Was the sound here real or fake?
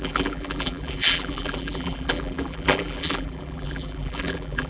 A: fake